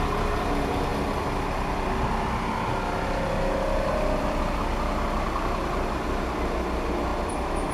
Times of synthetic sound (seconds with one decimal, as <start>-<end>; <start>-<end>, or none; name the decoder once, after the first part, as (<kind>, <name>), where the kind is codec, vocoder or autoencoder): 0.9-4.4 (vocoder, BigVGAN v2); 7.1-7.7